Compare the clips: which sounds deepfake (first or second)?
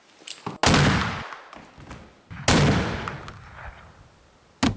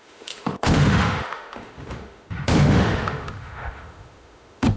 second